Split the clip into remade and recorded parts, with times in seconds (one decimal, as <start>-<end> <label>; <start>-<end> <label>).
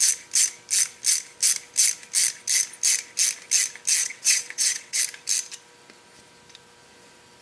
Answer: 0.0-4.0 recorded; 4.0-5.0 remade; 5.0-7.4 recorded